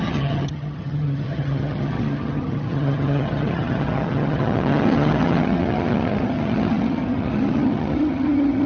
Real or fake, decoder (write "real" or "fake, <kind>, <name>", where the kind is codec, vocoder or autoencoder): fake, vocoder, HiFi-GAN